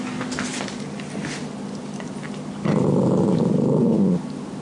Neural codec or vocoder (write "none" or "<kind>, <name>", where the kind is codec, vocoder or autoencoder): none